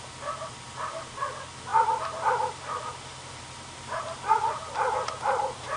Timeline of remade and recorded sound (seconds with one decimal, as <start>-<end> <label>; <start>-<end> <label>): 0.0-5.8 recorded